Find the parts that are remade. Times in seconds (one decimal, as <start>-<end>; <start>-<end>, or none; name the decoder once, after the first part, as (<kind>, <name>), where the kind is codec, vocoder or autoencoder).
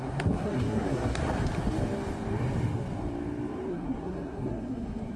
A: 0.0-1.2 (codec, SNAC); 3.7-5.2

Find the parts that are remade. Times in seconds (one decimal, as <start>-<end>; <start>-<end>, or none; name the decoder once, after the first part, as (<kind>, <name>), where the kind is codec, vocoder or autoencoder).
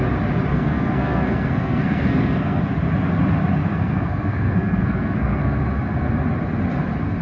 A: 0.5-2.6 (codec, SNAC); 3.7-5.6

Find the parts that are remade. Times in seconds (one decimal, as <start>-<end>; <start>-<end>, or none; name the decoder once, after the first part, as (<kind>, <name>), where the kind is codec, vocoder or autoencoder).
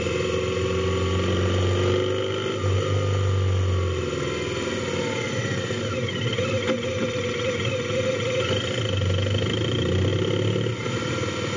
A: none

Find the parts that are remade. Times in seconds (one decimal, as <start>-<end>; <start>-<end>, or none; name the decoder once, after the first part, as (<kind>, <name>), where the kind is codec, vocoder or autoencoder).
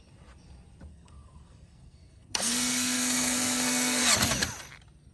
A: 0.9-4.0 (codec, SNAC)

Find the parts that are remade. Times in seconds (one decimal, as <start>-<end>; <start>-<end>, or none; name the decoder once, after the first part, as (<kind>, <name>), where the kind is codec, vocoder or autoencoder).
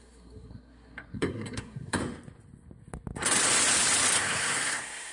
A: 0.0-2.0 (codec, SNAC); 4.2-5.1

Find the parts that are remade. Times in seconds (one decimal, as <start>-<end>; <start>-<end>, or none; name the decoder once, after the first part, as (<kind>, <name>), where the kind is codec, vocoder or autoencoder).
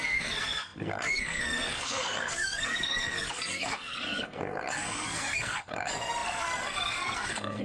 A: 0.0-7.6 (codec, SNAC)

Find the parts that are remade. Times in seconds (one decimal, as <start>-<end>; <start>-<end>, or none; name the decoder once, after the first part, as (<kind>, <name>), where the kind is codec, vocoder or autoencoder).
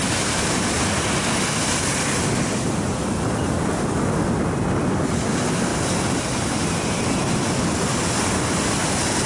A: none